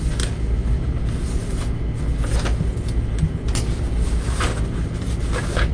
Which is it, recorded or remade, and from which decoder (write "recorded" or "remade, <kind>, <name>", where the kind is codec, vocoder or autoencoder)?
recorded